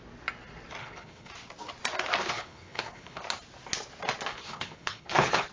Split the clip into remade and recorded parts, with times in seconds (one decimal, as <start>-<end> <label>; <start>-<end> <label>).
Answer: 0.0-0.8 recorded; 0.8-1.3 remade; 1.3-2.2 recorded; 2.2-3.2 remade; 3.2-4.3 recorded; 4.3-5.5 remade